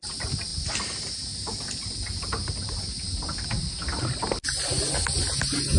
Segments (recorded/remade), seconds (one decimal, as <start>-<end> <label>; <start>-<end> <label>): 0.0-5.8 recorded